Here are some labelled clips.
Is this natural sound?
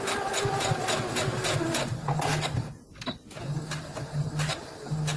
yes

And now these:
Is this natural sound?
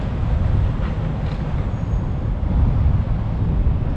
yes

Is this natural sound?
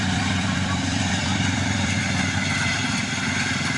no